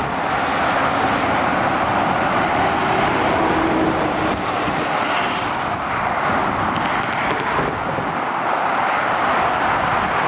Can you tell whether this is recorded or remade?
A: recorded